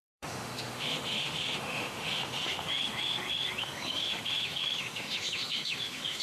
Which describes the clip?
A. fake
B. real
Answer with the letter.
A